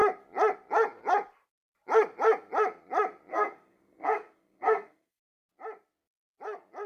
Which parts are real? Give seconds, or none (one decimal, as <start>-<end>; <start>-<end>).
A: 0.0-3.3; 5.3-6.9